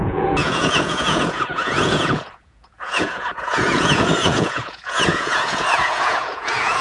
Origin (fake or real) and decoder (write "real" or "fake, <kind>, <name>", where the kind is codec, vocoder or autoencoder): fake, vocoder, Vocos